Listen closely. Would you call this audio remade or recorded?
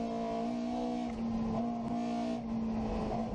recorded